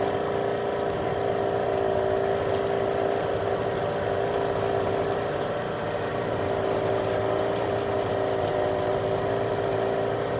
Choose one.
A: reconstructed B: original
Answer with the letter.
B